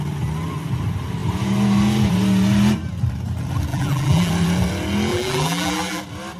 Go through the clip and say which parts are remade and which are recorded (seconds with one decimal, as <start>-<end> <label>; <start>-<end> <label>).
0.0-3.7 recorded; 3.7-4.3 remade; 4.3-5.1 recorded; 5.1-6.0 remade; 6.0-6.4 recorded